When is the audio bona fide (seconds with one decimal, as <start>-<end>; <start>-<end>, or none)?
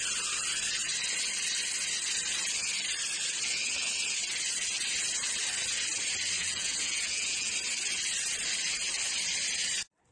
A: 0.0-6.4; 7.5-10.1